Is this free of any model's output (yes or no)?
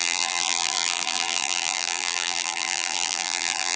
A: no